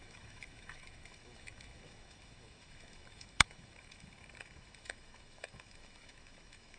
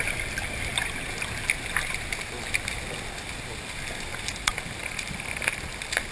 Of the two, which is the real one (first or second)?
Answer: second